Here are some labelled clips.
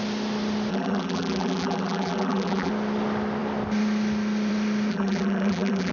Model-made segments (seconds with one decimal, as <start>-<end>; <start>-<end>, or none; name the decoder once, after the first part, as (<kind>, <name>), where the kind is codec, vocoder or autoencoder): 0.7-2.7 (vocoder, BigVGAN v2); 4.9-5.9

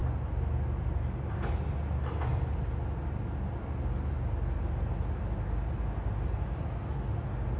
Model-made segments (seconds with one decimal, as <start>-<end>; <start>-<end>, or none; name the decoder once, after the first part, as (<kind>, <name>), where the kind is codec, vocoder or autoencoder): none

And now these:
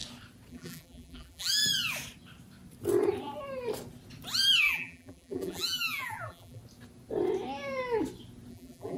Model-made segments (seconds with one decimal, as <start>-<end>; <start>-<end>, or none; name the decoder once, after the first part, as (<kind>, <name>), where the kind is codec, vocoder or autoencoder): 0.5-1.6 (vocoder, BigVGAN v2); 4.6-6.6; 8.5-9.0